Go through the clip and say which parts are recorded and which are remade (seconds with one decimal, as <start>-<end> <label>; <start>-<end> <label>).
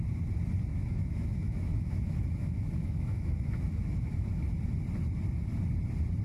0.0-0.7 recorded; 0.7-4.4 remade; 4.4-6.2 recorded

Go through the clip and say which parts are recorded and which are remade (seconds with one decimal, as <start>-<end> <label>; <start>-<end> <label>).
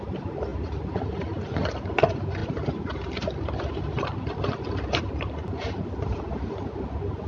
0.0-7.3 recorded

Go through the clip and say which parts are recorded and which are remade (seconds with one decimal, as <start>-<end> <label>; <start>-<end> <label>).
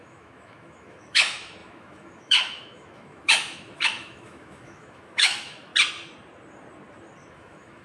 0.0-5.7 remade; 5.7-7.3 recorded; 7.3-7.8 remade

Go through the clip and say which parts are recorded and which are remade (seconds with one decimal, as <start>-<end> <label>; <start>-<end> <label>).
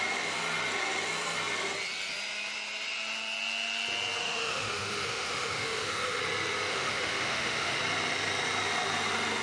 0.0-4.2 recorded; 4.2-6.2 remade; 6.2-6.7 recorded; 6.7-7.8 remade; 7.8-9.4 recorded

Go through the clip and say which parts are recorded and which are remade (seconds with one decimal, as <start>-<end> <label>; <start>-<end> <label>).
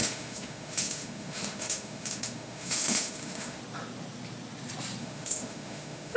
0.0-3.6 remade; 3.6-5.0 recorded; 5.0-6.2 remade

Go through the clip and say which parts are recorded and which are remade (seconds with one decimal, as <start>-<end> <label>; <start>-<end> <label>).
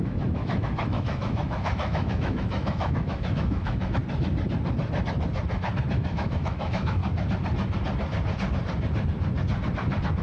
0.0-4.0 remade; 4.0-5.9 recorded; 5.9-7.0 remade; 7.0-10.2 recorded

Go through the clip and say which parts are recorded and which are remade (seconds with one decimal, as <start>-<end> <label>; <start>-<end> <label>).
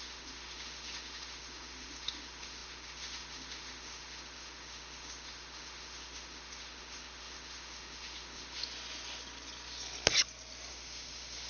0.0-8.6 remade; 8.6-10.7 recorded; 10.7-11.5 remade